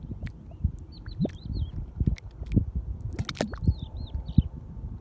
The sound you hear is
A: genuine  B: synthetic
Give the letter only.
A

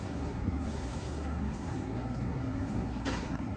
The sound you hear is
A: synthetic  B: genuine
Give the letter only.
A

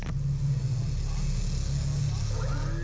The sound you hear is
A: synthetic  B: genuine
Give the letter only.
B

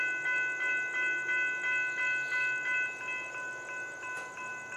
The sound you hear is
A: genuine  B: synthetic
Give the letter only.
A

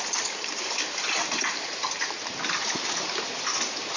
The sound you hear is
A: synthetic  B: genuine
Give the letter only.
B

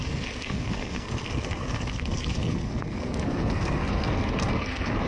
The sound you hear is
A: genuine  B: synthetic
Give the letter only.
B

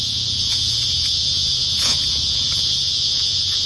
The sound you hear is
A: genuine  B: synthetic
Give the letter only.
B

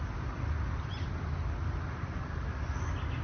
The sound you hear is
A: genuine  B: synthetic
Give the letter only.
A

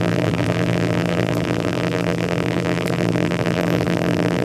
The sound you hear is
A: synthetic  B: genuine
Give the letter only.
A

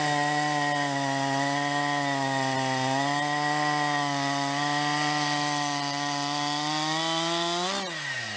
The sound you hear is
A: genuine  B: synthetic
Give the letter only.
A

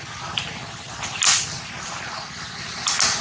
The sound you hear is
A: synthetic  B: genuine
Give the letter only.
B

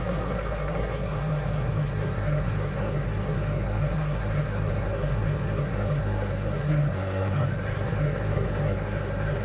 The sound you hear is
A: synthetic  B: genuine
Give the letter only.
A